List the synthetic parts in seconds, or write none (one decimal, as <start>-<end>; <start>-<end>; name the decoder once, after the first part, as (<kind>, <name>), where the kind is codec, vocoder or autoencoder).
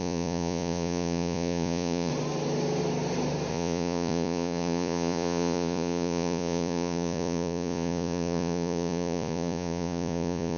0.0-2.1 (vocoder, Vocos); 3.5-10.6